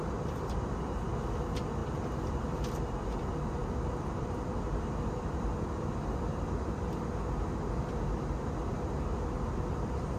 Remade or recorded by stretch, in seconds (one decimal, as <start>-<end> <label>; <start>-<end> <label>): 0.0-10.2 recorded